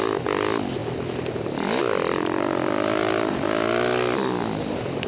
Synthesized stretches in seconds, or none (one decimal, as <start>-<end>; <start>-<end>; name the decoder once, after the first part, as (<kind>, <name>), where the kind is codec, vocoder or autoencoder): none